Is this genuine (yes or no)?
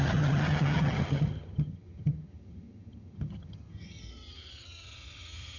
no